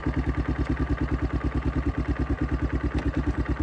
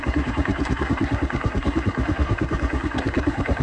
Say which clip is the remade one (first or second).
second